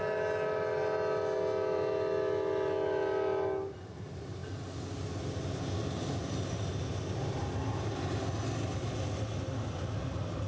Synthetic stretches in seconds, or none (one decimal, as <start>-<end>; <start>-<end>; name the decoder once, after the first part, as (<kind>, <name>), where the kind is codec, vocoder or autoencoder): none